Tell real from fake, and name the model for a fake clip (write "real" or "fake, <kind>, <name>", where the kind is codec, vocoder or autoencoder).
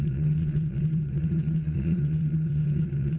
fake, vocoder, WaveNeXt